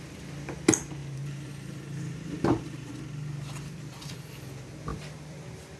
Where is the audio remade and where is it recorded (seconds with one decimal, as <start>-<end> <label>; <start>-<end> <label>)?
0.0-1.0 recorded; 1.0-2.9 remade; 2.9-4.9 recorded; 4.9-5.8 remade